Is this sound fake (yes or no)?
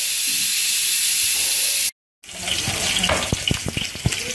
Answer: no